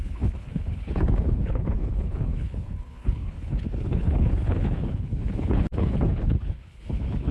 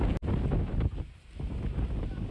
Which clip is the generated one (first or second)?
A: first